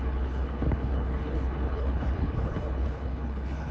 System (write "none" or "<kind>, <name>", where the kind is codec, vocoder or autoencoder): codec, HILCodec